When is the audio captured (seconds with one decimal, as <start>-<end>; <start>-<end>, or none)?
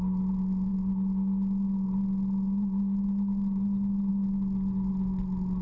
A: 0.0-5.6